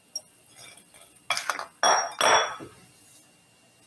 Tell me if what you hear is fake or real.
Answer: real